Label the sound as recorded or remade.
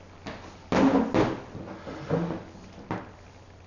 recorded